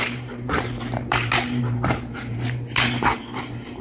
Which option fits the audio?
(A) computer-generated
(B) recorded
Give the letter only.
A